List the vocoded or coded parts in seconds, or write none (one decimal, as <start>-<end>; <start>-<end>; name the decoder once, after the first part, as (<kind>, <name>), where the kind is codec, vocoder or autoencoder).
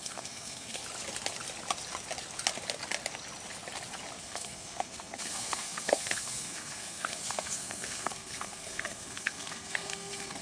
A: 0.0-0.8 (codec, SNAC); 4.2-10.4